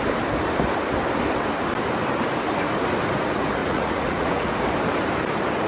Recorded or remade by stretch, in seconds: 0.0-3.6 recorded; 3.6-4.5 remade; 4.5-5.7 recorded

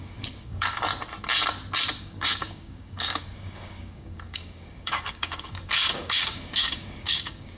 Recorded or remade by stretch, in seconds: 0.0-0.9 remade; 0.9-2.0 recorded; 2.0-7.6 remade

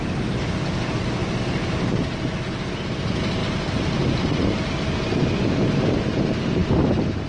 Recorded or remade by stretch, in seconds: 0.0-7.3 recorded